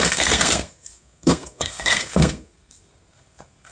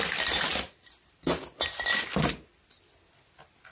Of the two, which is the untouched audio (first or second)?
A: second